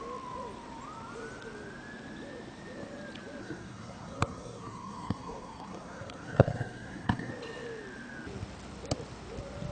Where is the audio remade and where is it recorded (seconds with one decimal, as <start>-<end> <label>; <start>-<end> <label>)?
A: 0.0-3.4 recorded; 3.4-7.3 remade; 7.3-9.7 recorded